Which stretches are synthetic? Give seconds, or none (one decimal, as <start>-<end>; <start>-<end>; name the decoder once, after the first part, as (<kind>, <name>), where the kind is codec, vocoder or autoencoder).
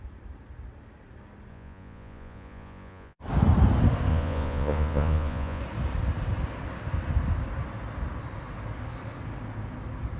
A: 1.5-3.2 (vocoder, Vocos); 4.1-5.6